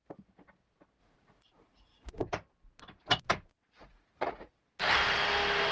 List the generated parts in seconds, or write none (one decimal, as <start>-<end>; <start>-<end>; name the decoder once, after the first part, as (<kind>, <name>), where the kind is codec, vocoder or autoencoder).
1.0-2.2 (vocoder, Vocos); 3.5-4.5

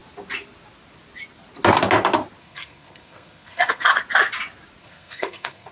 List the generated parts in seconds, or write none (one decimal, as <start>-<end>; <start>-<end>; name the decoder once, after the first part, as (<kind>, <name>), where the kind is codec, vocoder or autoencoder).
2.4-3.9 (codec, SNAC); 4.8-5.7

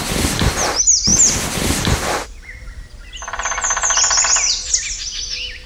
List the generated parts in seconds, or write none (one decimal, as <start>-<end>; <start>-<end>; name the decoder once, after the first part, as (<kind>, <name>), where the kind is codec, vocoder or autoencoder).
none

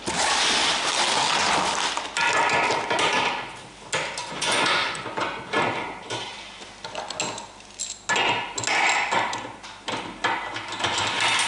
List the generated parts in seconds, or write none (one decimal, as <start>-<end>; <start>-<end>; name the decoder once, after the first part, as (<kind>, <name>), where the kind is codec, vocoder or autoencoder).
4.2-5.5 (vocoder, Vocos)

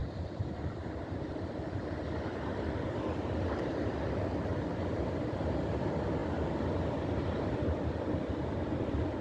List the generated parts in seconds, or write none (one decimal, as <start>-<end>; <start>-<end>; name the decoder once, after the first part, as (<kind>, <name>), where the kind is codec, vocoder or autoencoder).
none

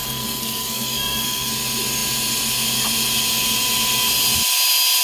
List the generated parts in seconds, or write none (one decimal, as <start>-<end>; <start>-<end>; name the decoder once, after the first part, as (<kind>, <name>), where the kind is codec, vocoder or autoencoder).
0.0-1.5 (codec, SNAC)